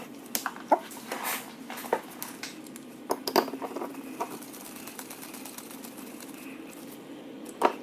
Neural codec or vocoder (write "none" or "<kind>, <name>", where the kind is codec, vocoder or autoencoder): none